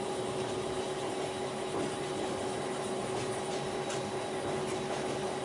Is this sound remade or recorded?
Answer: recorded